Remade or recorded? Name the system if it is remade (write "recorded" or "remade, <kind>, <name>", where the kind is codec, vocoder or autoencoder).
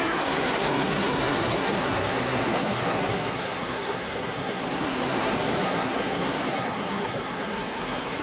remade, codec, SNAC